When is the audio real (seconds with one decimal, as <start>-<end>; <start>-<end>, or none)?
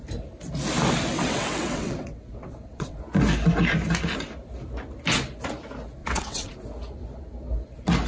0.0-1.1; 3.0-6.0; 6.5-8.1